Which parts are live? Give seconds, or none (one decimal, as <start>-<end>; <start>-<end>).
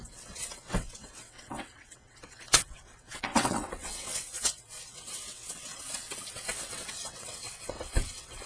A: none